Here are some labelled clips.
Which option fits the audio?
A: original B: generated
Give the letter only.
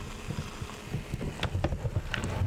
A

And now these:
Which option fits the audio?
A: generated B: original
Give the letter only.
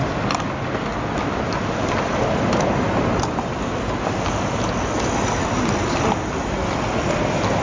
B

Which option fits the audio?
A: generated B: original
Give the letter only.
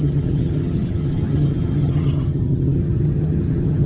A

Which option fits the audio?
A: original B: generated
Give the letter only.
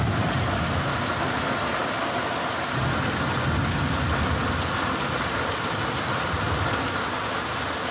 A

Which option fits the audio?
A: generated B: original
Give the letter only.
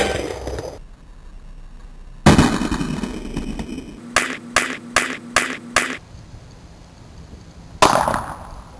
B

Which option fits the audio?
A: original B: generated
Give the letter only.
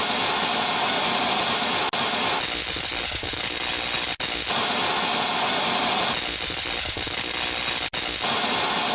A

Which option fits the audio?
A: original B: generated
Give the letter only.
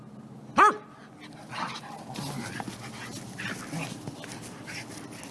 A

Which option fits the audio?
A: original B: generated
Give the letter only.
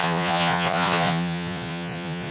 B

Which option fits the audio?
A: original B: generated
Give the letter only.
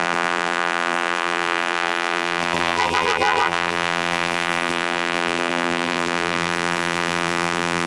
B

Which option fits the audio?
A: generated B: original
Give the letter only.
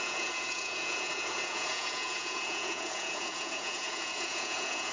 A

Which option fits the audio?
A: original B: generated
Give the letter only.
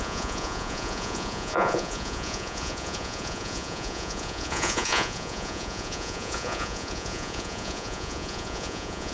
B